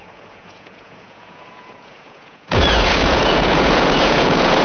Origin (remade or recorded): remade